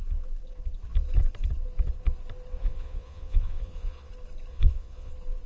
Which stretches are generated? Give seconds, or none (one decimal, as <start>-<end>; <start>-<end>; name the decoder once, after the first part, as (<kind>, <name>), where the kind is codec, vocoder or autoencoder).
2.6-4.1 (vocoder, Vocos); 4.5-5.1